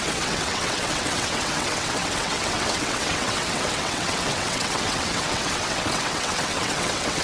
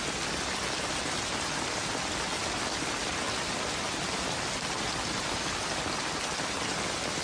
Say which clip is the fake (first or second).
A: first